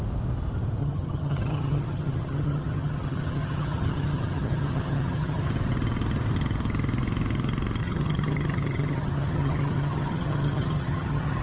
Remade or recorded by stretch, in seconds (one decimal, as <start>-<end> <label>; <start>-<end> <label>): 0.0-0.8 recorded; 0.8-5.5 remade; 5.5-7.8 recorded; 7.8-11.4 remade